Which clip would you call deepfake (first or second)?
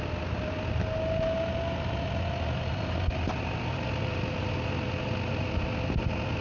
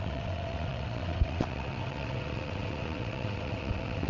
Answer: second